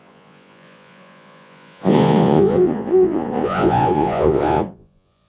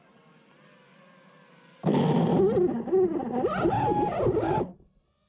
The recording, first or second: second